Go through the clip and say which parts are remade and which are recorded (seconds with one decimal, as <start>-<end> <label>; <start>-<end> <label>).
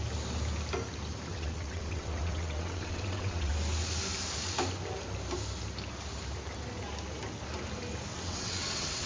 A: 0.0-1.3 recorded; 1.3-3.5 remade; 3.5-8.1 recorded; 8.1-9.1 remade